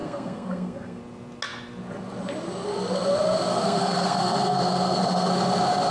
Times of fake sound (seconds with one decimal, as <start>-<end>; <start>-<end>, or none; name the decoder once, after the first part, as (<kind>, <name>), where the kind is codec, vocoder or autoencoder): 0.0-1.0 (codec, SNAC); 3.5-5.3